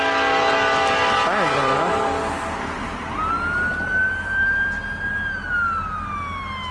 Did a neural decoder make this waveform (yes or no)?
no